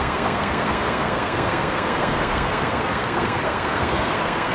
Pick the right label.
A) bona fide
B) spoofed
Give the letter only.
B